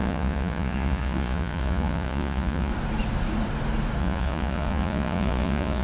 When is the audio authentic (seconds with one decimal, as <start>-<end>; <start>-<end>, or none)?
2.7-4.0

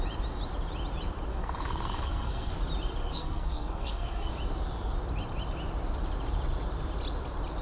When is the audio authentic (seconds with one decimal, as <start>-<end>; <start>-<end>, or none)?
0.0-1.3; 2.5-3.0; 4.3-7.6

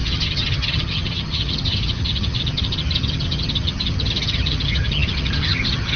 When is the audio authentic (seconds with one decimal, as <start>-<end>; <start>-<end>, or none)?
none

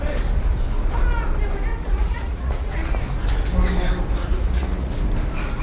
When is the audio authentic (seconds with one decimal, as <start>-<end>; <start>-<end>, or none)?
0.0-1.7; 2.7-4.2; 4.9-5.6

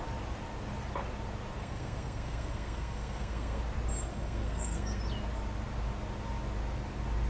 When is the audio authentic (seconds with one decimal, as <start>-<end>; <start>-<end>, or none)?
0.0-1.6; 3.6-4.1; 5.0-7.3